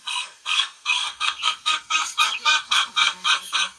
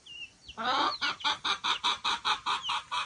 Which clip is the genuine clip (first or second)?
second